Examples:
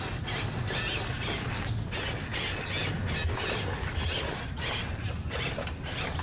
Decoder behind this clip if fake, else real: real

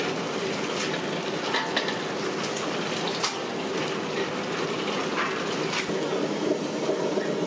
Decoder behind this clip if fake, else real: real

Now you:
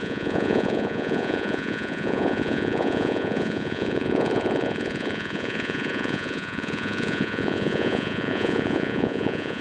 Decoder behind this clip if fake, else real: fake, vocoder, Vocos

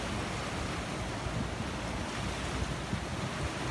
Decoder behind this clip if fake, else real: real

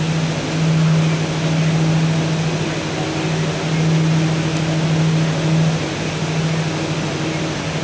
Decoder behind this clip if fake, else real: real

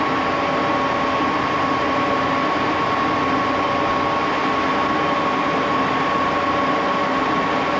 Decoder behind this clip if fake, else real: real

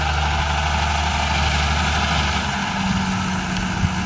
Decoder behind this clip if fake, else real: real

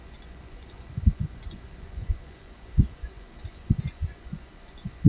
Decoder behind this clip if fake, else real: fake, vocoder, Vocos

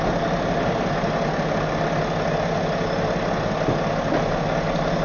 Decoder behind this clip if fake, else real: real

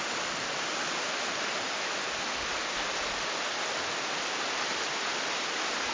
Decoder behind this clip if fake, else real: real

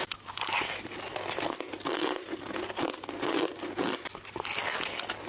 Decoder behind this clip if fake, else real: real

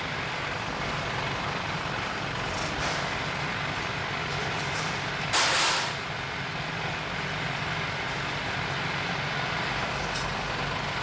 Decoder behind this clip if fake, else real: real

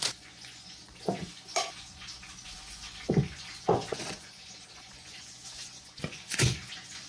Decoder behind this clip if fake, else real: fake, vocoder, Vocos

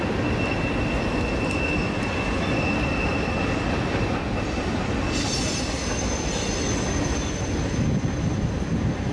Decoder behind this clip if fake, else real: real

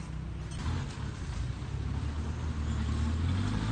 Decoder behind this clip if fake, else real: real